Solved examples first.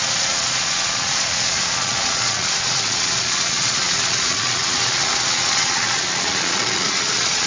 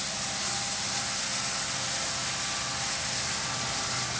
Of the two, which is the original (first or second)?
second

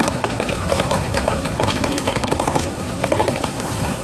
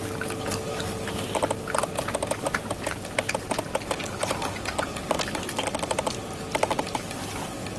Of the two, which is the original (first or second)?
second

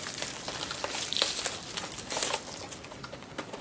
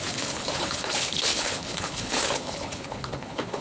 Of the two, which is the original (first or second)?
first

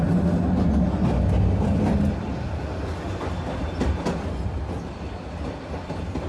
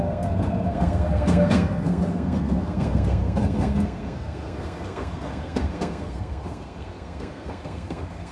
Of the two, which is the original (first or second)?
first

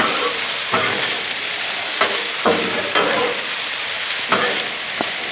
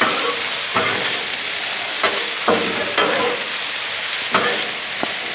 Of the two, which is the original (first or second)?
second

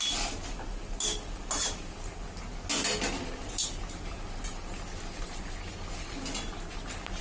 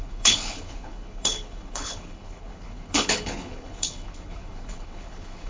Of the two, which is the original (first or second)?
first